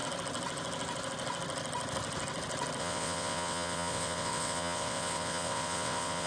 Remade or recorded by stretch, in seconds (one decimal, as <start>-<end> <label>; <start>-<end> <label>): 0.0-2.8 recorded; 2.8-6.3 remade

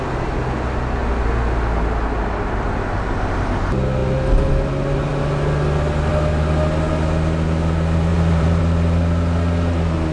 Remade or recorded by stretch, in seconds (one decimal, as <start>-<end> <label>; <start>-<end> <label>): 0.0-8.1 recorded; 8.1-8.6 remade; 8.6-10.1 recorded